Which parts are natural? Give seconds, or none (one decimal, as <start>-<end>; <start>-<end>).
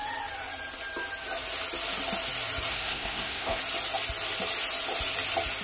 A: 0.0-2.7; 3.6-5.6